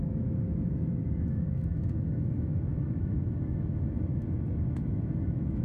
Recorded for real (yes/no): no